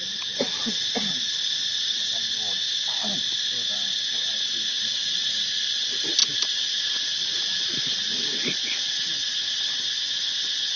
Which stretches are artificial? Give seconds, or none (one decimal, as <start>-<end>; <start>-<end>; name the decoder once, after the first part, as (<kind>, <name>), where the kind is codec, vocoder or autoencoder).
none